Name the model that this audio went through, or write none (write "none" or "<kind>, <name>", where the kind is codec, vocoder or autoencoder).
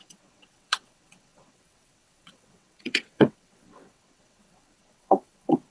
vocoder, WaveNeXt